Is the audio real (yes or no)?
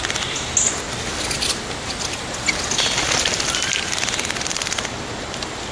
yes